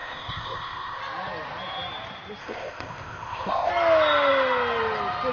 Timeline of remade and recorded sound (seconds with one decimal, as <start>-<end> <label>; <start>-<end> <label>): 0.0-1.0 remade; 1.0-2.4 recorded; 2.4-3.7 remade; 3.7-5.3 recorded